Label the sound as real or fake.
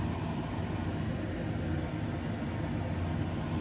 real